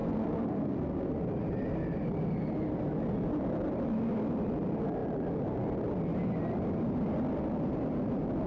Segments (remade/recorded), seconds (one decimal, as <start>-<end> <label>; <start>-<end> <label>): 0.0-1.1 remade; 1.1-8.5 recorded